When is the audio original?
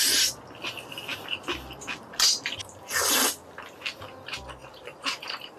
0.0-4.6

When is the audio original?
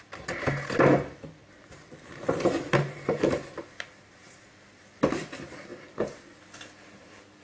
0.0-1.4; 4.5-5.7; 6.4-7.4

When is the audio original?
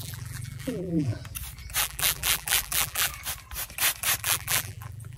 1.2-1.8; 3.1-4.2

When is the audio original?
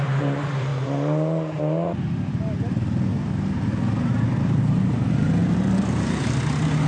0.7-4.6